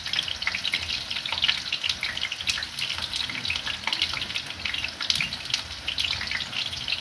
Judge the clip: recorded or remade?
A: recorded